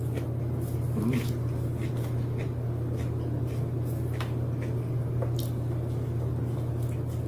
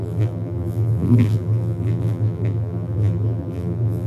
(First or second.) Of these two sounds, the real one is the first